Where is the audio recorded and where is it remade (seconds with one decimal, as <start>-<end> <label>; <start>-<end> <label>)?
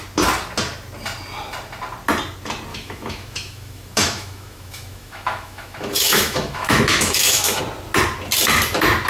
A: 0.0-2.7 recorded; 2.7-7.6 remade; 7.6-9.1 recorded